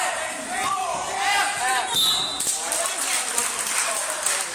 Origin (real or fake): real